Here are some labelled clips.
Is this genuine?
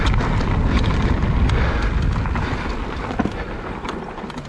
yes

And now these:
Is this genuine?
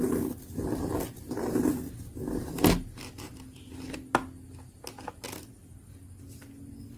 yes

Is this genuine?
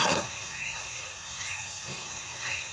no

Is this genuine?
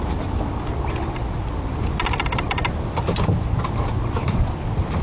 yes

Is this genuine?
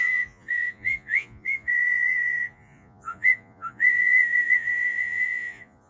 no